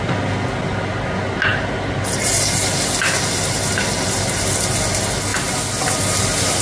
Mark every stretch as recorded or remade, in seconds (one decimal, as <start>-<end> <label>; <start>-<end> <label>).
0.0-6.6 recorded